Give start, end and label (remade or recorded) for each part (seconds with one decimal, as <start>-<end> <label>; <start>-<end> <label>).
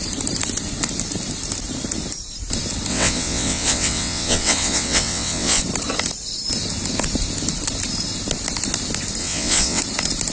0.0-2.9 recorded; 2.9-5.6 remade; 5.6-9.2 recorded; 9.2-9.8 remade; 9.8-10.3 recorded